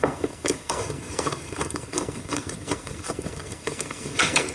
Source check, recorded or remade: remade